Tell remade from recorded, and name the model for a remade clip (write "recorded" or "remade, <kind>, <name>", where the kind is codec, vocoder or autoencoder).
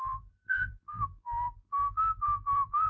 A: remade, vocoder, BigVGAN v2